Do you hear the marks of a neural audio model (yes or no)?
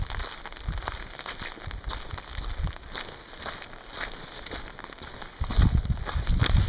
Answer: no